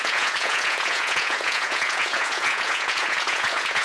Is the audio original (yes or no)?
no